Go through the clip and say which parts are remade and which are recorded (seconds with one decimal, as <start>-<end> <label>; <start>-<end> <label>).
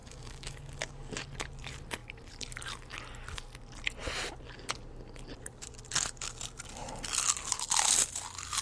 0.0-1.1 remade; 1.1-8.6 recorded